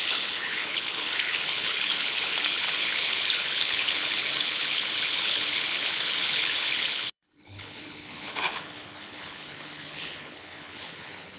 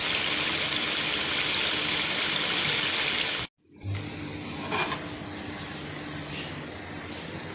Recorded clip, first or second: second